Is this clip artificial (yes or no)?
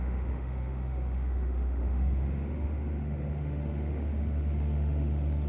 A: yes